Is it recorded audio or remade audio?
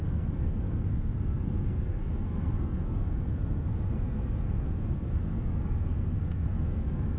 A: remade